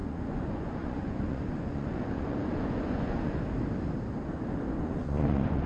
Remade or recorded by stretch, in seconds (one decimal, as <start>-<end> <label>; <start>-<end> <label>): 0.0-3.4 remade; 3.4-4.8 recorded; 4.8-5.7 remade